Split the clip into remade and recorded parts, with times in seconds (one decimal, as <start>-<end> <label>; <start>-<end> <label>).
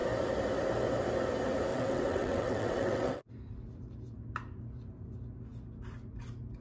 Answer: 0.0-1.7 recorded; 1.7-3.3 remade; 3.3-6.6 recorded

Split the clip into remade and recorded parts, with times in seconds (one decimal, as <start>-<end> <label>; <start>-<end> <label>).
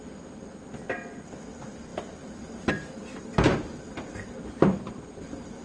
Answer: 0.0-1.9 recorded; 1.9-2.7 remade; 2.7-3.3 recorded; 3.3-5.6 remade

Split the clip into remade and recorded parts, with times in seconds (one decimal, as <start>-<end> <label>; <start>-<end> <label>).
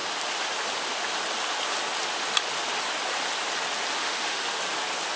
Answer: 0.0-4.0 recorded; 4.0-4.6 remade; 4.6-5.2 recorded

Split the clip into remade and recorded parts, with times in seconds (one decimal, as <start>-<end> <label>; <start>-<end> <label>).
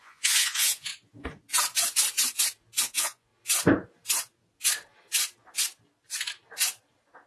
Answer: 0.0-0.9 remade; 0.9-2.8 recorded; 2.8-3.3 remade; 3.3-7.3 recorded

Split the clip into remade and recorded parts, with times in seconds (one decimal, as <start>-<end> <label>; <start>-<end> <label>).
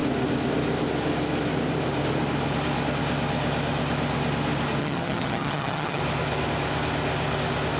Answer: 0.0-4.8 recorded; 4.8-6.0 remade; 6.0-7.8 recorded